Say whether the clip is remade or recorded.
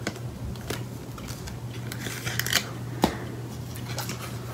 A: recorded